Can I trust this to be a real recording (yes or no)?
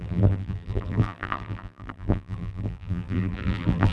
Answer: no